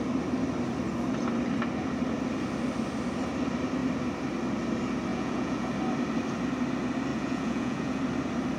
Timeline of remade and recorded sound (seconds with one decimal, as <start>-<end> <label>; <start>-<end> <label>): 0.0-5.1 recorded; 5.1-5.7 remade; 5.7-7.1 recorded; 7.1-8.0 remade; 8.0-8.6 recorded